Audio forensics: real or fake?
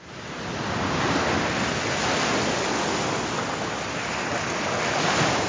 real